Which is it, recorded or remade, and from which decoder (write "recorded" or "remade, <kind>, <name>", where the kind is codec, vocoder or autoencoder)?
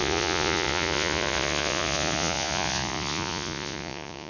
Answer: remade, vocoder, Vocos